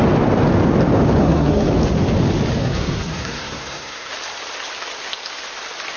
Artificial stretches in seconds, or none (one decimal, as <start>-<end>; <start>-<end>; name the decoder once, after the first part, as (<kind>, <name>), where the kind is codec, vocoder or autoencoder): 1.2-1.7 (codec, SNAC); 2.6-4.1